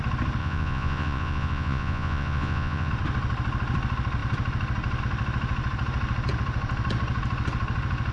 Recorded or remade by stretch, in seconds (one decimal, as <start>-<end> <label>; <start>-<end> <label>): 0.0-0.4 recorded; 0.4-2.9 remade; 2.9-8.1 recorded